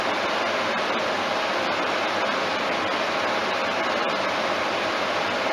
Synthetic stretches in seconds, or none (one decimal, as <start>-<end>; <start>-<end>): none

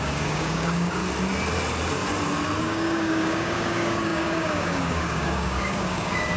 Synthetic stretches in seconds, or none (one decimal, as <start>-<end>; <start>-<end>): 0.0-1.0; 2.6-6.4